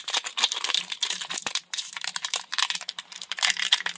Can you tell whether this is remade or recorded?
remade